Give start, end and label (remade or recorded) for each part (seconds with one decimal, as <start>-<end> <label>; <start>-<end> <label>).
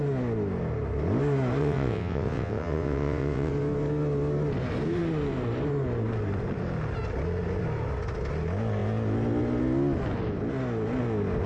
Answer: 0.0-1.6 recorded; 1.6-3.5 remade; 3.5-11.5 recorded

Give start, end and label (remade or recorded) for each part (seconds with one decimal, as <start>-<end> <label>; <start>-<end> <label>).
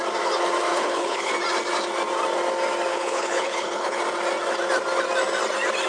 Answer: 0.0-0.7 recorded; 0.7-1.3 remade; 1.3-2.9 recorded; 2.9-4.0 remade; 4.0-5.9 recorded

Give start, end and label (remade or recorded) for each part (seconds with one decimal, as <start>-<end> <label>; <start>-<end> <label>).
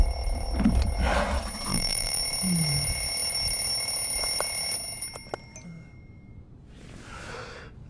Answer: 0.0-1.7 recorded; 1.7-2.2 remade; 2.2-7.9 recorded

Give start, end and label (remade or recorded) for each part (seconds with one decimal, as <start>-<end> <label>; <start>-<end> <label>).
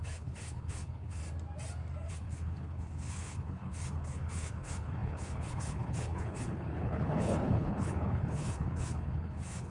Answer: 0.0-1.2 remade; 1.2-2.1 recorded; 2.1-9.7 remade